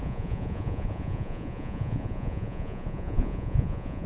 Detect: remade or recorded remade